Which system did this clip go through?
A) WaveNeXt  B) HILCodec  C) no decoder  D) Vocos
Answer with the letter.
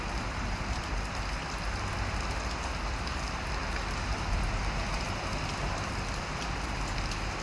C